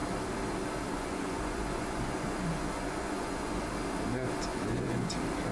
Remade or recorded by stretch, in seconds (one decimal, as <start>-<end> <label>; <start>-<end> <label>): 0.0-0.9 recorded; 0.9-3.6 remade; 3.6-4.5 recorded; 4.5-5.1 remade; 5.1-5.5 recorded